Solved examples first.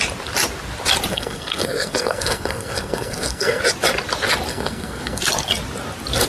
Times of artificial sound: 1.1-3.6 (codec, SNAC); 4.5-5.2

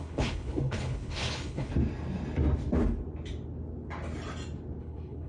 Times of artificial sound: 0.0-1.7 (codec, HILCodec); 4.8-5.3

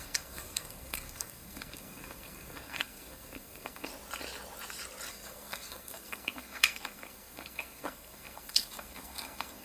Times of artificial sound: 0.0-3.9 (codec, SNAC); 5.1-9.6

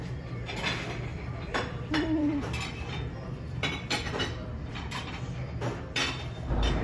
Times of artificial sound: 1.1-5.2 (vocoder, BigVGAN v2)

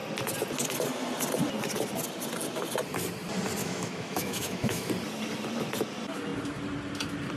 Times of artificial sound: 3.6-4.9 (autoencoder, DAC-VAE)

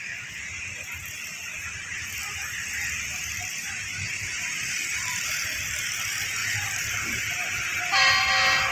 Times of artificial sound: 6.4-8.1 (vocoder, BigVGAN v2)

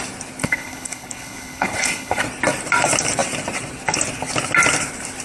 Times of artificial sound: 0.4-2.2 (codec, HILCodec)